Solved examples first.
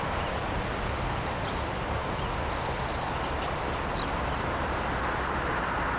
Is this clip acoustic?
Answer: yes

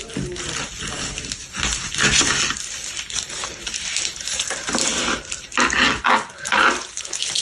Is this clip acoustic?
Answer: yes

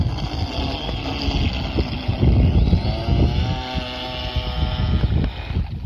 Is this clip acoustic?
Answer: yes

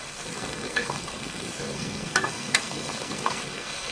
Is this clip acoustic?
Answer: no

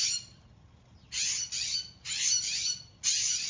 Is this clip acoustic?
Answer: yes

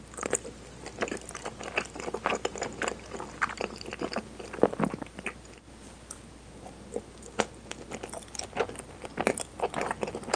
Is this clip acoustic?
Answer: yes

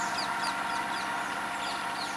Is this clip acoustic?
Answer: yes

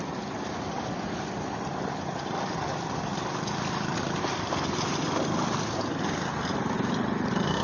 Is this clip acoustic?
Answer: yes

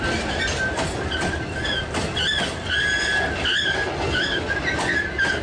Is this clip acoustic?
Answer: yes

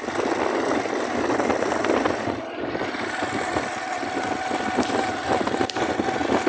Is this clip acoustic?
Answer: yes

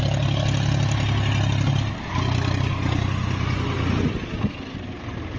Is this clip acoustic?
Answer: yes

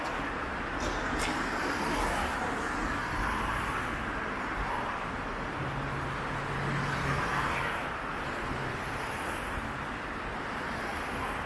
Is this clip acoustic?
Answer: yes